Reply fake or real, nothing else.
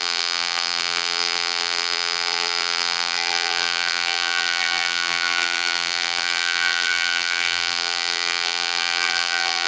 fake